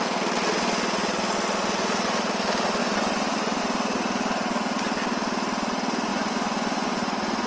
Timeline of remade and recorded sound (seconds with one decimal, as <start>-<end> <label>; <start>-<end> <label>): 0.0-2.8 recorded; 2.8-3.6 remade; 3.6-6.1 recorded; 6.1-7.5 remade